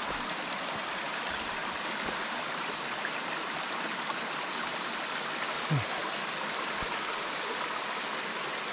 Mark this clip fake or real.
real